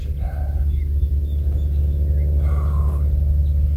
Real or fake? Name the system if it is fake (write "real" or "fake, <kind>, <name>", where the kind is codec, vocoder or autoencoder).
real